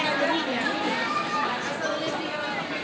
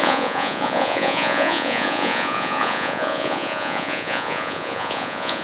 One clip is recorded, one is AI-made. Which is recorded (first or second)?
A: first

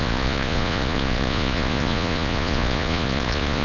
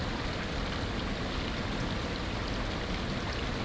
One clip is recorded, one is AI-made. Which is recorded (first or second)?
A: second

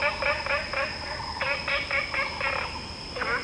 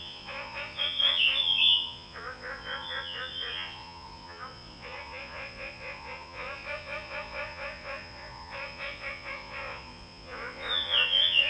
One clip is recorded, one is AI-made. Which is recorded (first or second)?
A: first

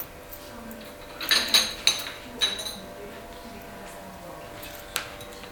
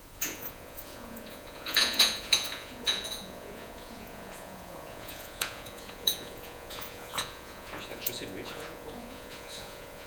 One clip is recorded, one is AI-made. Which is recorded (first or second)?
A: first